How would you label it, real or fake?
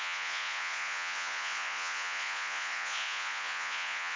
fake